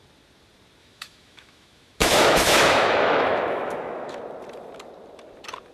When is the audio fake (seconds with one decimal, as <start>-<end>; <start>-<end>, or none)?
0.8-4.2